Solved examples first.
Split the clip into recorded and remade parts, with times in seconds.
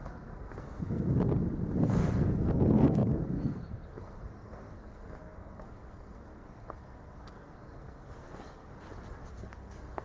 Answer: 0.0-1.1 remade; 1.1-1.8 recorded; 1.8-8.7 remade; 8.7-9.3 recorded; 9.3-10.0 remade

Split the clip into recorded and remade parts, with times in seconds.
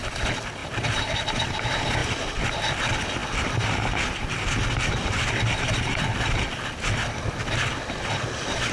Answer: 0.0-8.7 recorded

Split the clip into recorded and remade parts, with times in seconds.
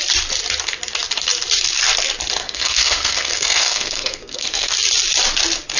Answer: 0.0-2.4 recorded; 2.4-4.7 remade; 4.7-5.8 recorded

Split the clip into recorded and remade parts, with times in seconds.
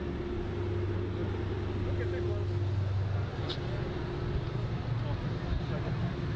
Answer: 0.0-6.4 recorded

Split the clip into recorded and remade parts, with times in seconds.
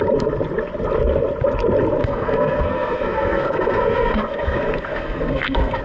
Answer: 0.0-2.0 recorded; 2.0-5.8 remade